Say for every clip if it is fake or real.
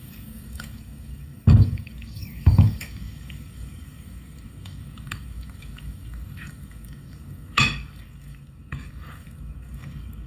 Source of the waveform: fake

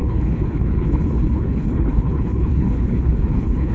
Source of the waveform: fake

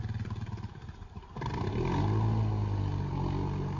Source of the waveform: real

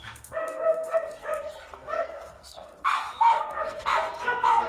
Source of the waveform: fake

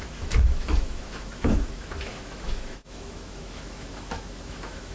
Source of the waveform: fake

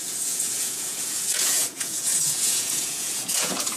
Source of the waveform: fake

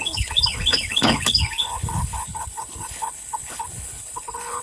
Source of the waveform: fake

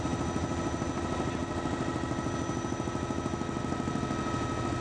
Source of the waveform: real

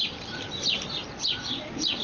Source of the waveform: real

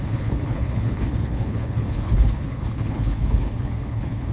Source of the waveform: fake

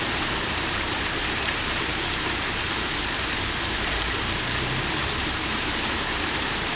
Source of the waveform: fake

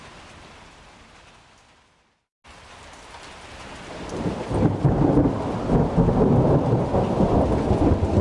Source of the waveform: real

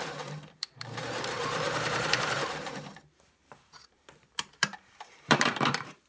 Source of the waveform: fake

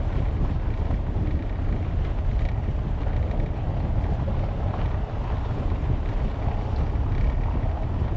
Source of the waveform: real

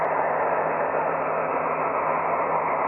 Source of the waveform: real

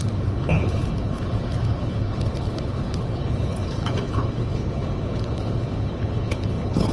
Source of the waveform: fake